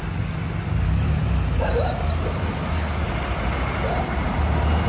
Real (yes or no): yes